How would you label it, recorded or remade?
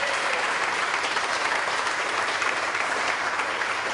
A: remade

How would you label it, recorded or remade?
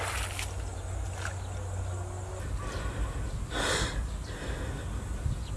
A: recorded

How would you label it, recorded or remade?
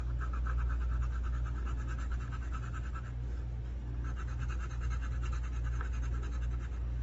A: recorded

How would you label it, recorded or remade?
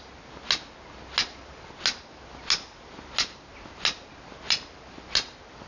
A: recorded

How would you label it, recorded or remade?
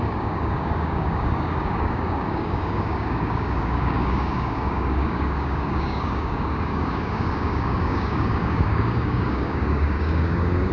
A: remade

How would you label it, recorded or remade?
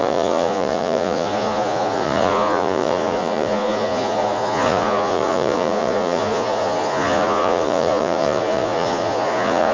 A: remade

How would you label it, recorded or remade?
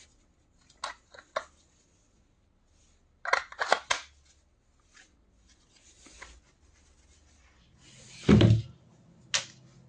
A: recorded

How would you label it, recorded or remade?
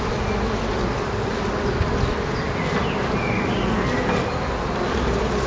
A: remade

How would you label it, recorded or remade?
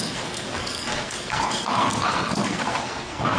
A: remade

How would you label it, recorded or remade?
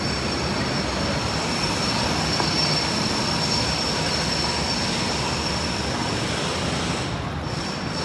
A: recorded